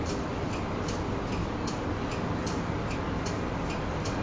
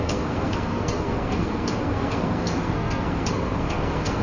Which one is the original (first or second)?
first